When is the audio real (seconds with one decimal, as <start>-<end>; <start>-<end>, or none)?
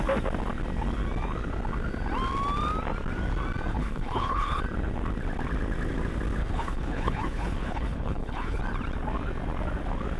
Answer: 0.0-3.7; 4.6-6.4; 8.6-10.2